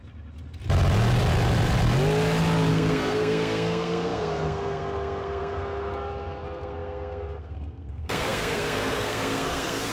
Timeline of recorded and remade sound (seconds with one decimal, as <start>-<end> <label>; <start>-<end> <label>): 0.0-2.7 recorded; 2.7-9.9 remade